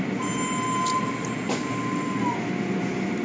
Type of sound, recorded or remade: recorded